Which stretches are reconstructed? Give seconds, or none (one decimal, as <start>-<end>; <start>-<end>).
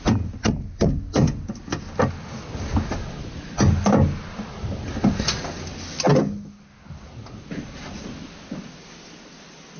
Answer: none